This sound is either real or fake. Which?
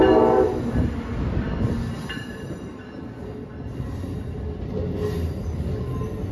real